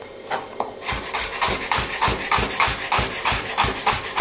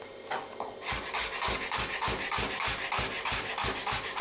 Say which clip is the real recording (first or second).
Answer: second